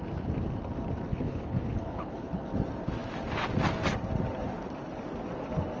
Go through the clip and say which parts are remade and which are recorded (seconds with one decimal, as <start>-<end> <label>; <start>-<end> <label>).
0.0-1.1 recorded; 1.1-2.4 remade; 2.4-5.8 recorded